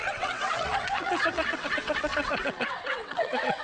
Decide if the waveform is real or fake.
fake